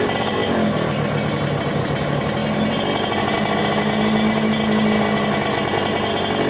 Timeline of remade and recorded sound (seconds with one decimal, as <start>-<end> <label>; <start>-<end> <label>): 0.0-6.5 recorded